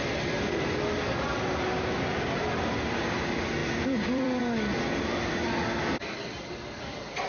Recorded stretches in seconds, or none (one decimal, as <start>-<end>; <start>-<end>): 0.0-3.6; 4.4-7.3